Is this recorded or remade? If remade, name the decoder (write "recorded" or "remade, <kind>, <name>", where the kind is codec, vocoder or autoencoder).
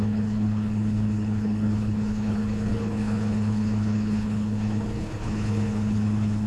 remade, codec, HILCodec